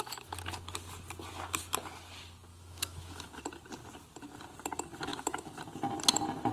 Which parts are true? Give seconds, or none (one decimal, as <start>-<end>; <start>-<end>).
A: 0.0-2.5; 3.4-5.1; 5.6-6.5